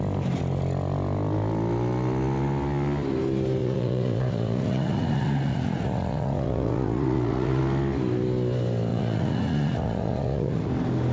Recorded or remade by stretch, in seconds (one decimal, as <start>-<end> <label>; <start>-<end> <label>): 0.0-3.6 recorded; 3.6-7.6 remade; 7.6-8.9 recorded; 8.9-10.7 remade; 10.7-11.1 recorded